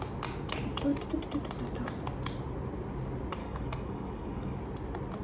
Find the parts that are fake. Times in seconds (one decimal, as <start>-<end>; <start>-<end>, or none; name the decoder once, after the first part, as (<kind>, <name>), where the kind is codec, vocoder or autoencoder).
3.4-4.6 (codec, DAC)